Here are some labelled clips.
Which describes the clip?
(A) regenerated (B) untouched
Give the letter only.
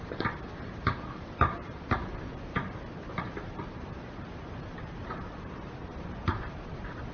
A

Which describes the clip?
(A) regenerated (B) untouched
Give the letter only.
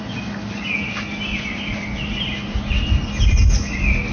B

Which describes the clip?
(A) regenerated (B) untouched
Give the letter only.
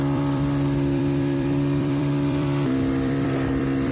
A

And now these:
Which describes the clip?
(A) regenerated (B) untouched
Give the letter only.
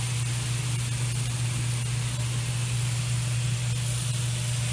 B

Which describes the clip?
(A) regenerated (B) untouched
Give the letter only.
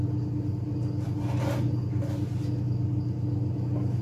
B